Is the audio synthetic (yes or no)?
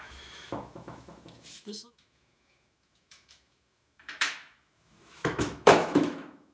yes